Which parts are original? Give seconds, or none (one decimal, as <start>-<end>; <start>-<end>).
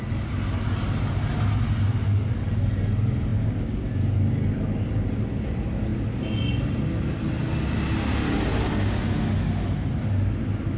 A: 0.0-10.8